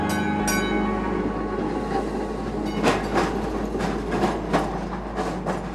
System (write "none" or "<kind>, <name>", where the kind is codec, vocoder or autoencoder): none